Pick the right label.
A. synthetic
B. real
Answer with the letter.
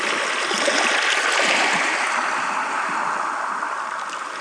B